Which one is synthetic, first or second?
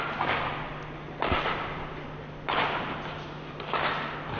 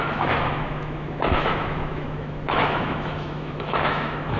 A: second